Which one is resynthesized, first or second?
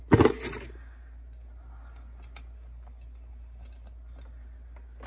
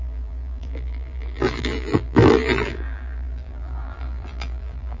second